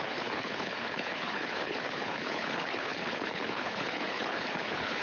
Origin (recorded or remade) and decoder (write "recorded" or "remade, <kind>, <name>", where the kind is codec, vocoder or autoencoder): remade, codec, HILCodec